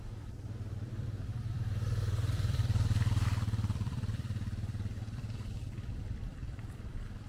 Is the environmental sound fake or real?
fake